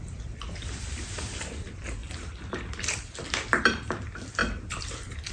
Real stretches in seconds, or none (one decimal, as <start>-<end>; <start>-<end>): none